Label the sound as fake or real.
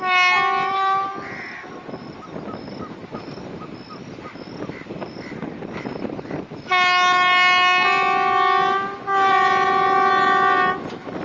real